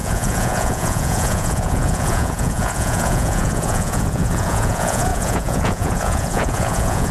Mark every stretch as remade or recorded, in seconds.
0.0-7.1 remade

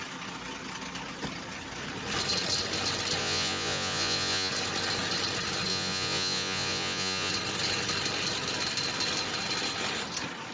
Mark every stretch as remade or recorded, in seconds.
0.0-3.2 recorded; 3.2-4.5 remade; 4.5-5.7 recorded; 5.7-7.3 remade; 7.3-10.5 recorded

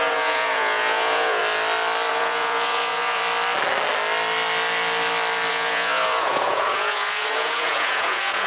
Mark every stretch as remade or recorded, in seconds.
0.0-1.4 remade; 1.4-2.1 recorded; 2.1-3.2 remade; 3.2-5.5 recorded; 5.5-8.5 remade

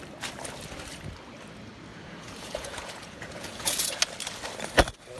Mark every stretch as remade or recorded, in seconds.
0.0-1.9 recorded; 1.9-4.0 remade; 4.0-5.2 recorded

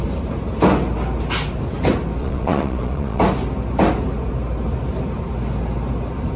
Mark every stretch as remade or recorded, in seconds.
0.0-2.2 recorded; 2.2-3.2 remade; 3.2-6.4 recorded

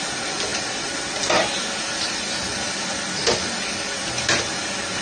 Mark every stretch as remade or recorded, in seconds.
0.0-5.0 recorded